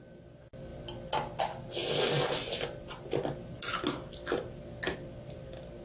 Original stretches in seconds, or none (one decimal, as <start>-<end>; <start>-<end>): 0.0-5.8